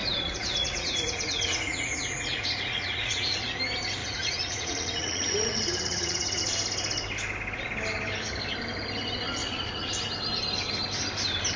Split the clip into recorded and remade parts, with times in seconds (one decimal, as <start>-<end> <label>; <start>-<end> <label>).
0.0-3.6 remade; 3.6-4.0 recorded; 4.0-6.4 remade; 6.4-9.4 recorded; 9.4-9.9 remade; 9.9-11.6 recorded